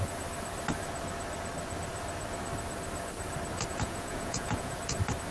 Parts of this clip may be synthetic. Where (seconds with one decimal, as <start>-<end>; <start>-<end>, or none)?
3.7-4.8

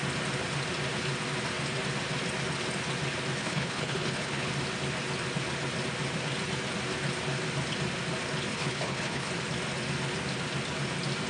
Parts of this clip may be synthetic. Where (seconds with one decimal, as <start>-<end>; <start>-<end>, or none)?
3.4-4.5; 8.5-9.3

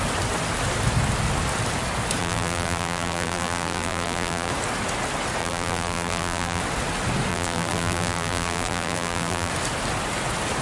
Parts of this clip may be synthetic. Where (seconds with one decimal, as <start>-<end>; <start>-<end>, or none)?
2.2-4.5; 5.4-6.6; 7.3-9.5

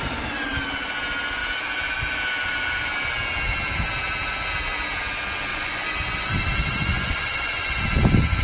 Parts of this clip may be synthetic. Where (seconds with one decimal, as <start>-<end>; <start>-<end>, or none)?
5.5-6.3; 6.9-7.8

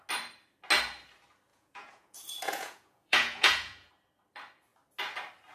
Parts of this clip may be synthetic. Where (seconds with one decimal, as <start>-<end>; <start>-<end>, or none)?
1.5-3.9

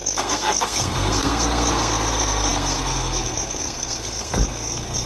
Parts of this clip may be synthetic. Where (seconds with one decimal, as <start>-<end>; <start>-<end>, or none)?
0.0-5.1

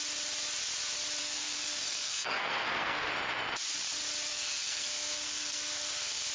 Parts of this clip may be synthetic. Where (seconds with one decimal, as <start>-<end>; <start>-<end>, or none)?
1.2-3.1; 4.3-6.3

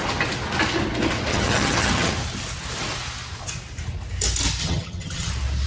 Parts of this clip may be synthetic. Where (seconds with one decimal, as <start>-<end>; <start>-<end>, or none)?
1.3-2.1; 4.6-5.3